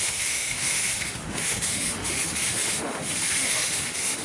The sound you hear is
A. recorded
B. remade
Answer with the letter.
B